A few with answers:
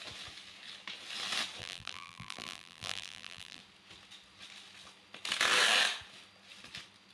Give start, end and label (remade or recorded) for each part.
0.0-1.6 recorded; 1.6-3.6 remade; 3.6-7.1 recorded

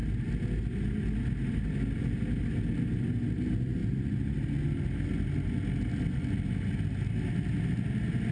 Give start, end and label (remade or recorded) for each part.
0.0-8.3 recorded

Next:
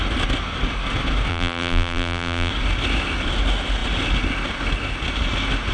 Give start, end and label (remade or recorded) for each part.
0.0-1.3 recorded; 1.3-2.5 remade; 2.5-5.7 recorded

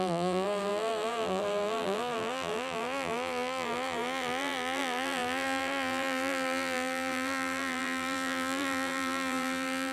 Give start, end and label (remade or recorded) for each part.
0.0-9.9 remade